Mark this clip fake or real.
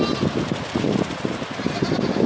real